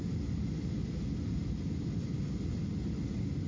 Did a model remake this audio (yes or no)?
no